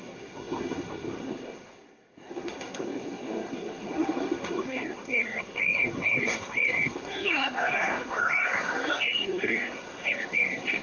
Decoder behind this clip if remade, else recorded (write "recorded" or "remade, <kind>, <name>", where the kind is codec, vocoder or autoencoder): remade, codec, SNAC